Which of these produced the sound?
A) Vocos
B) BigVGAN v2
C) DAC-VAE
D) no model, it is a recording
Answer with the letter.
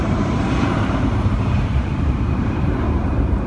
B